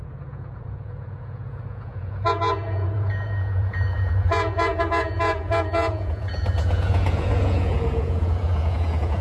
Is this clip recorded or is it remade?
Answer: remade